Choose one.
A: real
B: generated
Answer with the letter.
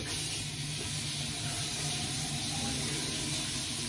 A